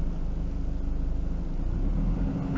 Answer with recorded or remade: recorded